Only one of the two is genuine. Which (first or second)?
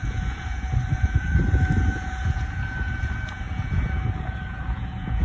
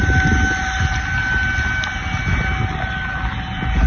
second